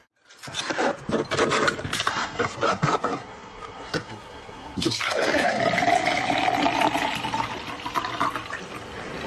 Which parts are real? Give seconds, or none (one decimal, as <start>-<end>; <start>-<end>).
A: 0.0-2.1; 5.6-9.3